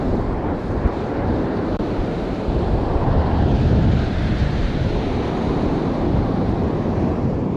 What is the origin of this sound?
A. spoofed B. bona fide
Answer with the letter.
A